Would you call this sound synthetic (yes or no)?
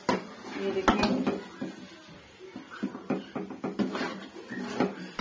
no